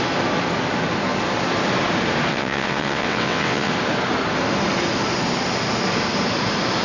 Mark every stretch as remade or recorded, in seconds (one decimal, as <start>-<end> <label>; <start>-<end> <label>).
0.0-2.3 recorded; 2.3-3.7 remade; 3.7-6.8 recorded